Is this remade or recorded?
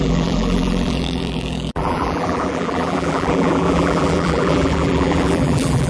remade